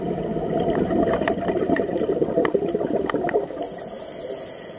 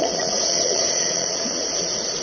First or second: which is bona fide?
first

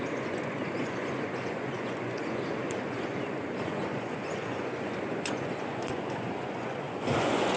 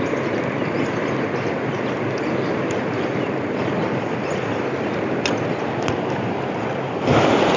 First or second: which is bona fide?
second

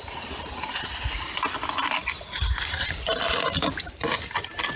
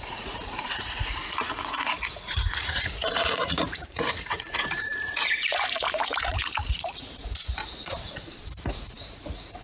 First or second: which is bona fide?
first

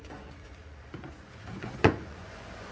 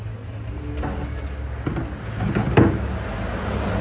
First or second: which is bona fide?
second